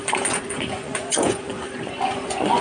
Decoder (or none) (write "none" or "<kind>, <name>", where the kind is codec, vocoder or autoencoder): vocoder, Vocos